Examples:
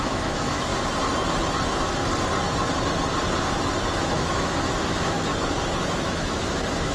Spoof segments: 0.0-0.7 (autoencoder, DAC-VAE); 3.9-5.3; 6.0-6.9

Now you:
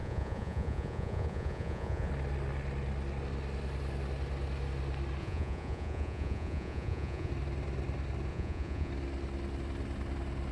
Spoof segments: 0.0-2.1 (vocoder, Vocos); 5.2-7.3; 8.3-8.9

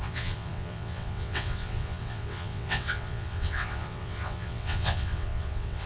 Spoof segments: 0.0-5.9 (vocoder, WaveNeXt)